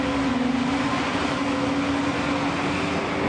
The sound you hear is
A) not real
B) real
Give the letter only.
B